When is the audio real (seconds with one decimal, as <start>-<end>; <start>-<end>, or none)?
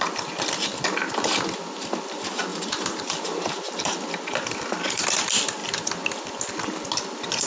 0.0-2.5; 3.8-7.5